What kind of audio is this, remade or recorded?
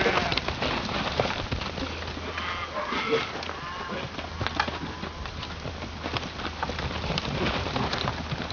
recorded